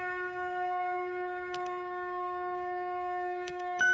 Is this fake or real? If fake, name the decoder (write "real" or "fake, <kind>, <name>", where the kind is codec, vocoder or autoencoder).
fake, codec, DAC